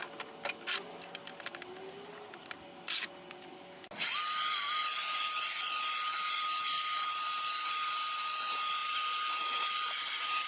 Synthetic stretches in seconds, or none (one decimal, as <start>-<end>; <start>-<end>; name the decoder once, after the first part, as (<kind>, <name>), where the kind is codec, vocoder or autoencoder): none